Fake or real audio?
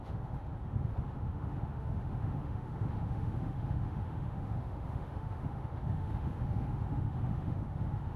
fake